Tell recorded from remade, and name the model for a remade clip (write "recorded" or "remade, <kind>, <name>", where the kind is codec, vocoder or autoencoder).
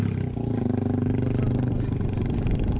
recorded